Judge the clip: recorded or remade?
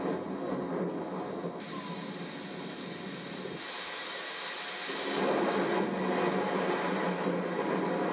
recorded